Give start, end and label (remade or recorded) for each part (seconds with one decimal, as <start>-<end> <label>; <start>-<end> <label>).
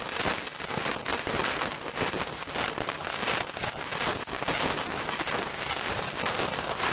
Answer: 0.0-6.9 recorded